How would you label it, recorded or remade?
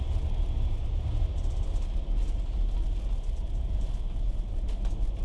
remade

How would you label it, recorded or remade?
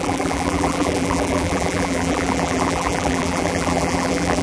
remade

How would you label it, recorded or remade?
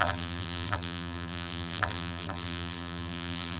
remade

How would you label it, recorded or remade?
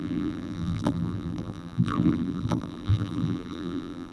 remade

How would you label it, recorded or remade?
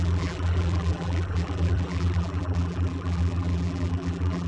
remade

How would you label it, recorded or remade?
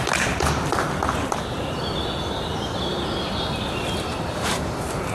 remade